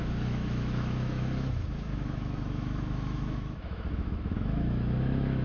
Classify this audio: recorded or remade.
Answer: remade